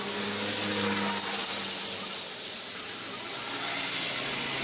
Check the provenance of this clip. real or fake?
real